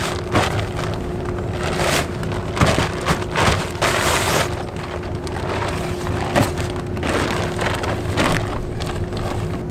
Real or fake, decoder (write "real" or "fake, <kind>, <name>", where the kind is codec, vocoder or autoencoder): real